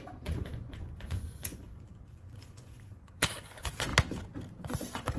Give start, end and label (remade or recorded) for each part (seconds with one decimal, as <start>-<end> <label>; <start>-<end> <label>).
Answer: 0.0-3.9 remade; 3.9-4.6 recorded; 4.6-5.2 remade

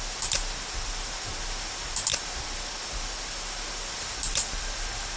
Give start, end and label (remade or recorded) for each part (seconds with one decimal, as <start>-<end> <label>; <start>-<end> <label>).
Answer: 0.0-5.2 recorded